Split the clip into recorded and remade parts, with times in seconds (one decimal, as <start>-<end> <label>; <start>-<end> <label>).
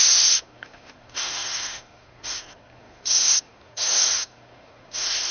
0.0-5.3 remade